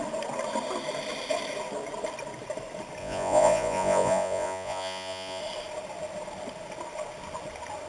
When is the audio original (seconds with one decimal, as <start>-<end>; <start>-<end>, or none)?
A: 0.0-3.0; 5.4-7.9